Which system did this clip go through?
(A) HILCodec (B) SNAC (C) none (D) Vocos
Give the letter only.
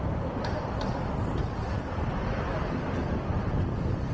C